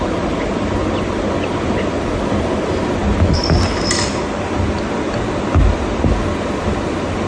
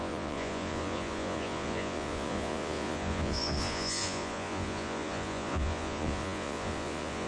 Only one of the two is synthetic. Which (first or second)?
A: second